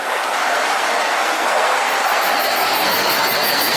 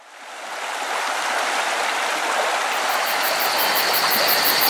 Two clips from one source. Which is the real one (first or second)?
second